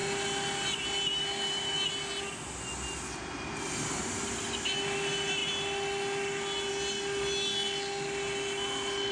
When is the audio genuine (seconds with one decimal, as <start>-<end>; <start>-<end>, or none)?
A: 0.0-9.1